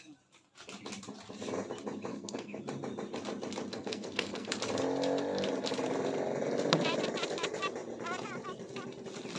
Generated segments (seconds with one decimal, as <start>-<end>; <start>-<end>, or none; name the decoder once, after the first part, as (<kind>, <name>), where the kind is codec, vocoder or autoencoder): 2.1-2.6 (codec, SNAC); 3.7-4.5